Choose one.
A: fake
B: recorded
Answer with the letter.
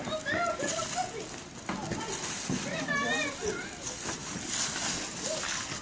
B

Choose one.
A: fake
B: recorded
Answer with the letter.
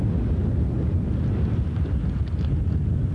B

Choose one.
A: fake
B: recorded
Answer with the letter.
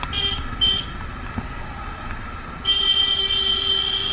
B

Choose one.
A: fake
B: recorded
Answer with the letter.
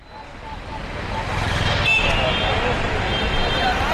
B